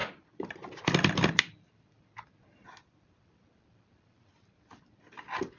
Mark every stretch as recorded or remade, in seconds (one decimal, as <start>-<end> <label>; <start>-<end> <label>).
0.0-0.8 recorded; 0.8-5.6 remade